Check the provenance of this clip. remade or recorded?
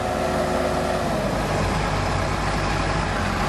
recorded